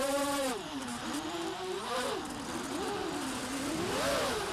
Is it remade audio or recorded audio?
recorded